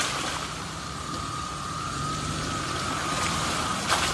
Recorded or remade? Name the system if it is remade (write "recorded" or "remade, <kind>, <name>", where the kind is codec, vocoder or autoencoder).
recorded